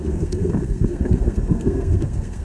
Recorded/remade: remade